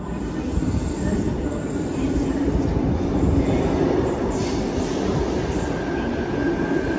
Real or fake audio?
real